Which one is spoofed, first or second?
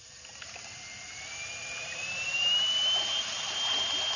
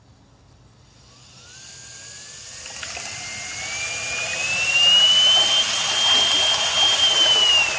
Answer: first